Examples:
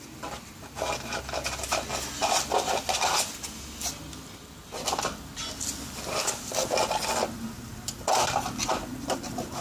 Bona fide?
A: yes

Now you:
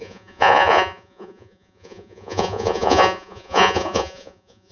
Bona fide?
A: no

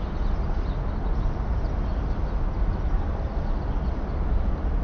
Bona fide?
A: yes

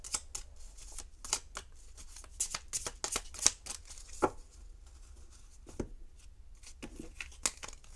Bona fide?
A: yes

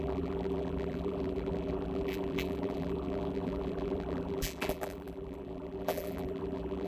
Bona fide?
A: no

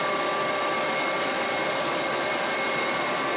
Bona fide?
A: no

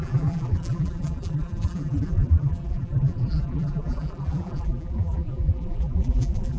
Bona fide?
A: no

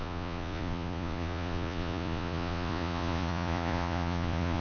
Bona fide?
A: no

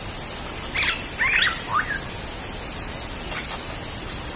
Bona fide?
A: yes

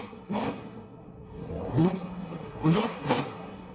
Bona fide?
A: no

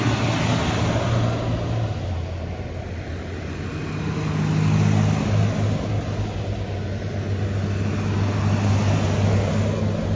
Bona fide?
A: yes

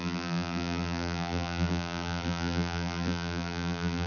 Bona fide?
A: no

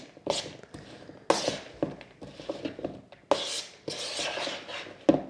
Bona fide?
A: yes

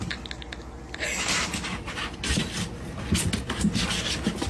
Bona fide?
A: yes